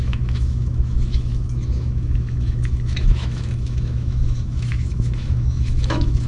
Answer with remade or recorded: remade